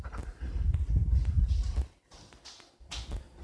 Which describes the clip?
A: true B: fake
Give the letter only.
A